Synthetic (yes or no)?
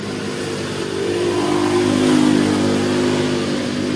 no